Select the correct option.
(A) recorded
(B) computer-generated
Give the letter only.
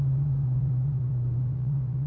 B